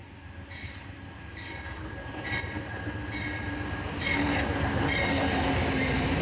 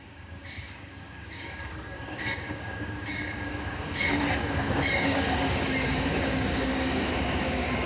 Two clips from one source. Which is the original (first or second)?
first